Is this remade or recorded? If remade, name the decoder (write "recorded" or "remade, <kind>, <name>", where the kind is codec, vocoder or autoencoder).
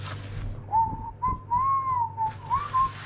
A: recorded